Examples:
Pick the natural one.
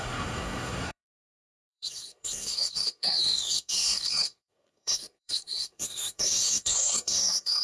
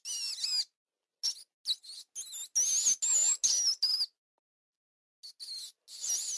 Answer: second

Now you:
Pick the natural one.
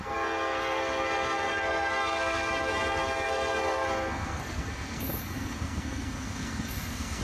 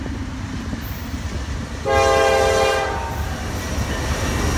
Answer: second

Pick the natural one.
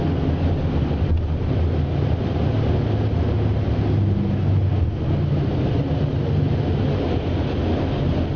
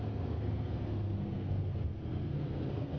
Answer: first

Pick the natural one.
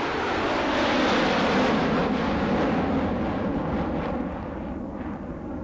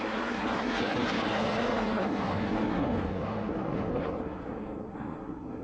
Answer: first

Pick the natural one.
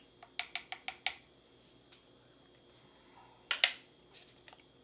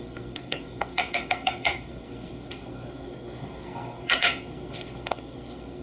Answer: first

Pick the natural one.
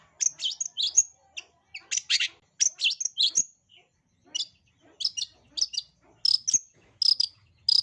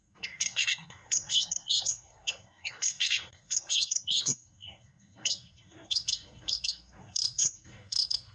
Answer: first